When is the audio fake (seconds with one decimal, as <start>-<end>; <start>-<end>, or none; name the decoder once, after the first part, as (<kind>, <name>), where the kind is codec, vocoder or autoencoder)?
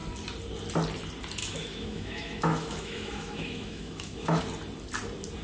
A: 1.4-4.4 (autoencoder, DAC-VAE)